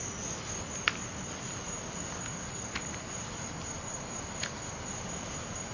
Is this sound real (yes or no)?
yes